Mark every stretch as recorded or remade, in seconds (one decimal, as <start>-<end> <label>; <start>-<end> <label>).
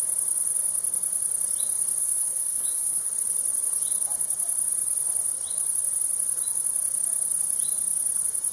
0.0-2.0 recorded; 2.0-3.1 remade; 3.1-8.5 recorded